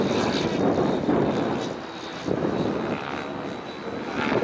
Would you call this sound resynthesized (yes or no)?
no